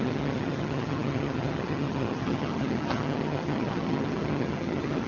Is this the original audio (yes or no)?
no